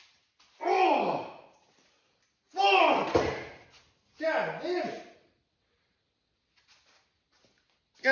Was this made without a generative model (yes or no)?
yes